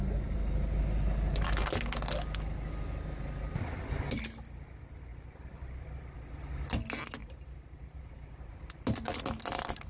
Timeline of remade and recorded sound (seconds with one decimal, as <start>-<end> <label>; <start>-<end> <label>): 0.0-7.2 recorded; 7.2-8.7 remade; 8.7-9.9 recorded